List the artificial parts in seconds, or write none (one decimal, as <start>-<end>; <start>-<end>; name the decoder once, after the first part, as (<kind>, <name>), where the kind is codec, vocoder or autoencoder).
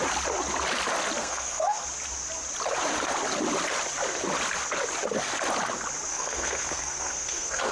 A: 1.2-1.8 (codec, SNAC); 6.1-7.7